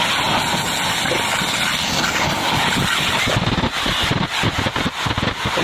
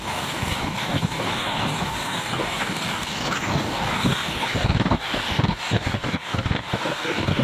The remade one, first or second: second